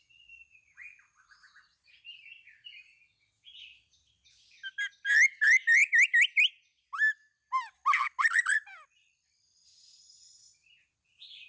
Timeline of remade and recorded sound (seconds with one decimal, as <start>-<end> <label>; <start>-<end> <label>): 0.0-11.5 recorded